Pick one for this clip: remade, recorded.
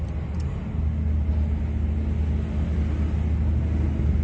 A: recorded